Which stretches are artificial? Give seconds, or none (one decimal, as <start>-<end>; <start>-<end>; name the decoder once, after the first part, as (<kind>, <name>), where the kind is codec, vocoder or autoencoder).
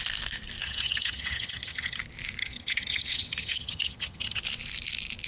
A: 0.6-2.0 (vocoder, HiFi-GAN); 2.4-4.4